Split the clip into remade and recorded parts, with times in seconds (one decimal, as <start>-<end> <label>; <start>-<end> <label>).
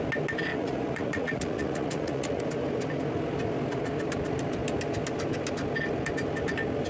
0.0-0.5 recorded; 0.5-2.4 remade; 2.4-6.9 recorded